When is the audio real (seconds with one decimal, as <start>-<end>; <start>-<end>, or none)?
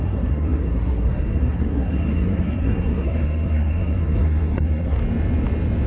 5.0-5.9